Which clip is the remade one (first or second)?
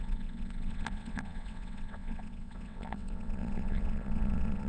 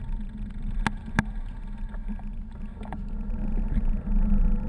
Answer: first